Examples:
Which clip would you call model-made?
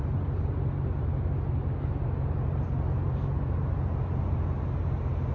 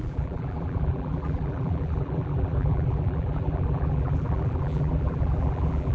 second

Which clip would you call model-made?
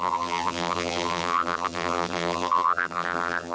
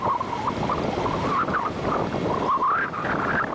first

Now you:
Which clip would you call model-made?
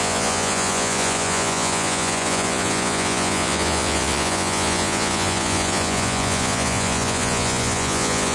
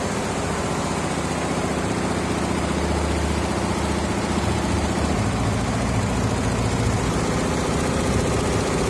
first